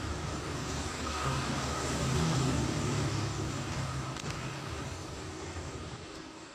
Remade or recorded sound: remade